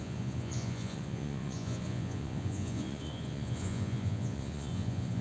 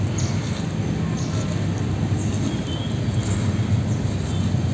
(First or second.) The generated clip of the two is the first